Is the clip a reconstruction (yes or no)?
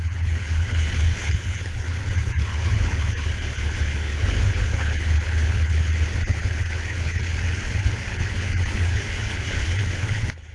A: yes